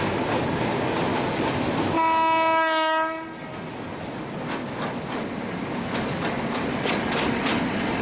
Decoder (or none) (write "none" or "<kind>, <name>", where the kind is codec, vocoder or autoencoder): none